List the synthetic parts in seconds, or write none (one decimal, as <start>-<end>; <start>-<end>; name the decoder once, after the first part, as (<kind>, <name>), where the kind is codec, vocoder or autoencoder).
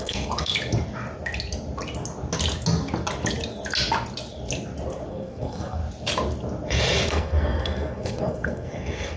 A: 0.0-0.5 (codec, SNAC); 5.1-5.8; 7.1-9.2